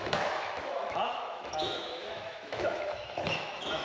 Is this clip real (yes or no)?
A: no